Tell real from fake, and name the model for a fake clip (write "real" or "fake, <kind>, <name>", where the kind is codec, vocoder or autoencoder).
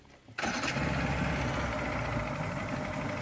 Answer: real